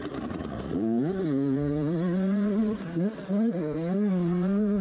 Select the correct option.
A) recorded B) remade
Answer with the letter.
B